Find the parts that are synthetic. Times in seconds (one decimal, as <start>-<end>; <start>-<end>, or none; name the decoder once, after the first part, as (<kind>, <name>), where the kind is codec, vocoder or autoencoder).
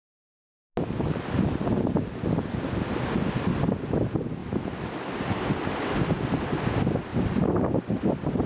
7.1-8.1 (vocoder, BigVGAN v2)